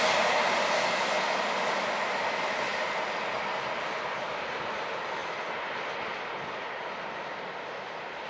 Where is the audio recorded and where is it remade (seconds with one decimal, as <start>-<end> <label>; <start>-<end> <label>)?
0.0-8.3 recorded